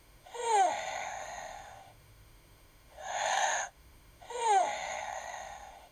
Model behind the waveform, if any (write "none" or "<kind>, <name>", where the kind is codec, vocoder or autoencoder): autoencoder, DAC-VAE